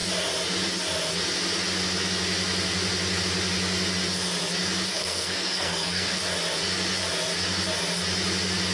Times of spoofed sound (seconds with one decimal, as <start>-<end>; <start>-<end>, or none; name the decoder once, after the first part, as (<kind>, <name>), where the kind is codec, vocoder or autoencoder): 4.9-6.2 (codec, SNAC)